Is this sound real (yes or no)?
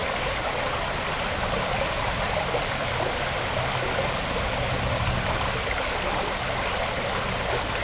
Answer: yes